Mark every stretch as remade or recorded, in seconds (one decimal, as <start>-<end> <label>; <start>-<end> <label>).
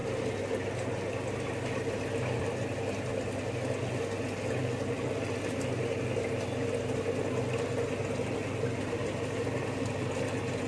0.0-10.7 recorded